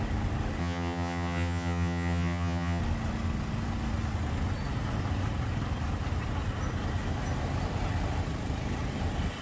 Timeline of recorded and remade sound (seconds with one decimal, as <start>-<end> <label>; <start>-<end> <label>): 0.0-0.6 recorded; 0.6-2.8 remade; 2.8-9.4 recorded